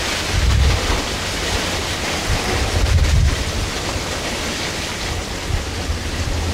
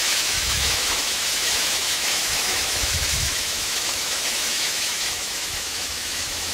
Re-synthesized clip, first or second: second